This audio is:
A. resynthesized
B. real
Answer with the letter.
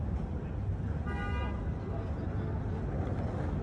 B